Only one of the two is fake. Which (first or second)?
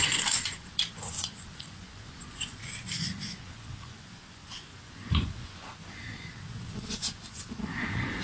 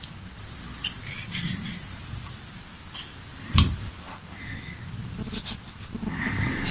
first